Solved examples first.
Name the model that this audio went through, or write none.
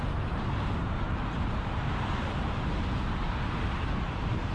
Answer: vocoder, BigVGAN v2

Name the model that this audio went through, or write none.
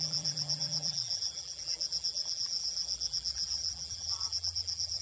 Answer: vocoder, BigVGAN v2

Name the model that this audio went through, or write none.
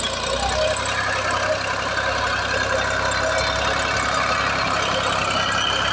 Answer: none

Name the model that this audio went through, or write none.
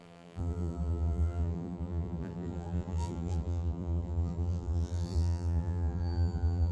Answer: vocoder, BigVGAN v2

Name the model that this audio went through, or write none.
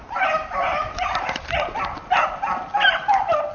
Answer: vocoder, BigVGAN v2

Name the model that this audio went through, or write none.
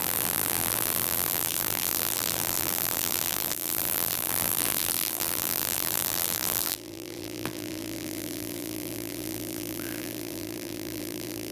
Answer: vocoder, BigVGAN v2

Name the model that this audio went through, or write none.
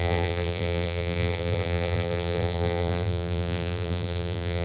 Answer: vocoder, BigVGAN v2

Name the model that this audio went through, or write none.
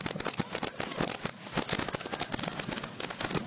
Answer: none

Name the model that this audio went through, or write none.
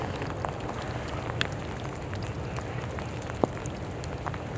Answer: none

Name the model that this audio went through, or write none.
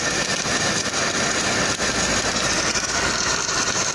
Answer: vocoder, BigVGAN v2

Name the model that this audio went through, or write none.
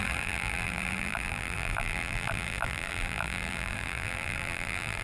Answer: vocoder, BigVGAN v2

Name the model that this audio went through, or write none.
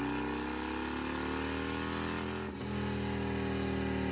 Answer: none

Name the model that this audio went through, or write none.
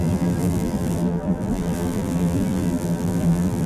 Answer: vocoder, BigVGAN v2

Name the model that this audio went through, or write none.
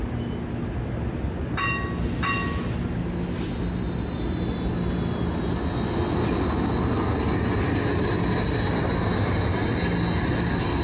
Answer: none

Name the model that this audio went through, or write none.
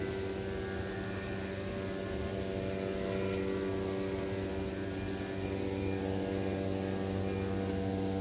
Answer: none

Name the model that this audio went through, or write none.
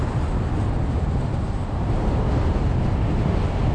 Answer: none